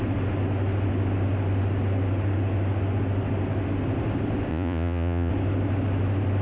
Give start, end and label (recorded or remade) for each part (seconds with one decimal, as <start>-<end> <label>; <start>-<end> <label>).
0.0-4.5 recorded; 4.5-5.3 remade; 5.3-6.4 recorded